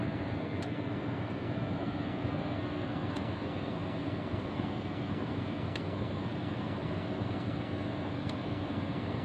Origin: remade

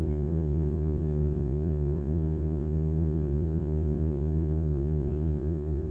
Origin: remade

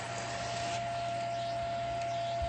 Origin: recorded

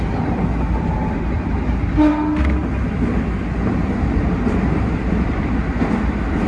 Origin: recorded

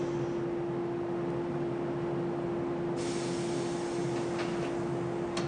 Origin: recorded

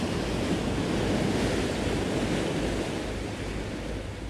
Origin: recorded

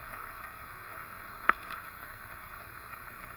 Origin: remade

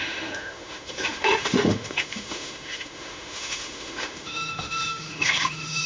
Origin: remade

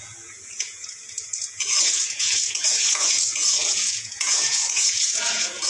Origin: remade